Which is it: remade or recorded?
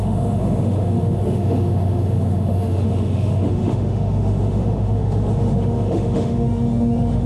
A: remade